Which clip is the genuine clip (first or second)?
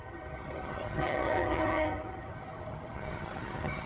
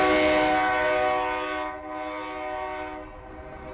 second